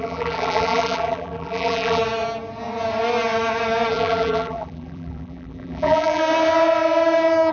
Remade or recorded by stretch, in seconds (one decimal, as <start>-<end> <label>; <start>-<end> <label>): 0.0-2.0 remade; 2.0-3.9 recorded; 3.9-6.2 remade; 6.2-7.5 recorded